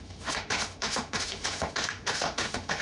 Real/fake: fake